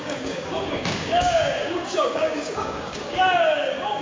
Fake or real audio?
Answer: fake